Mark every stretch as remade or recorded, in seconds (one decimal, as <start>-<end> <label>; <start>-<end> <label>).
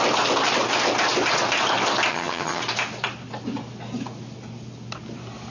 0.0-2.1 recorded; 2.1-2.6 remade; 2.6-5.5 recorded